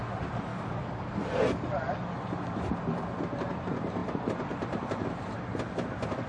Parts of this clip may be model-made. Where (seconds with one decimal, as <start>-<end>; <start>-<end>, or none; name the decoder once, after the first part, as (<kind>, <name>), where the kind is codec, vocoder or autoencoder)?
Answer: 0.5-1.2 (codec, DAC)